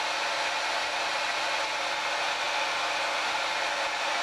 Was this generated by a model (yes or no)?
no